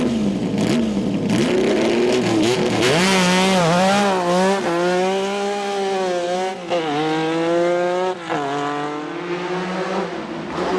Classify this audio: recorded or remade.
recorded